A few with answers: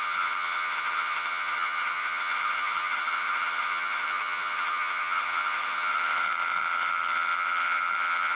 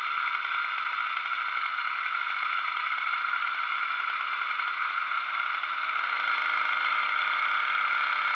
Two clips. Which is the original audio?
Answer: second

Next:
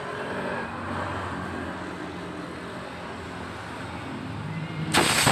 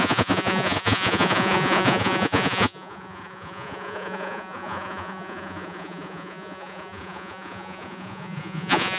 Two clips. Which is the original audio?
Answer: first